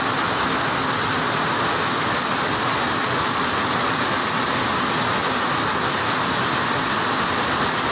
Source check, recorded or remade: recorded